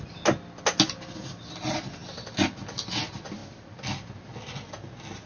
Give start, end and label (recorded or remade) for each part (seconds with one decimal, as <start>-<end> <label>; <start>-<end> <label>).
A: 0.0-5.3 recorded